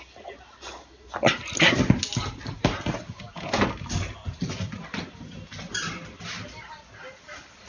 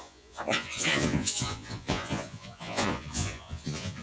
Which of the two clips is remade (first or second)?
second